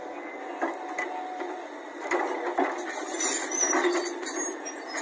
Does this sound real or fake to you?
real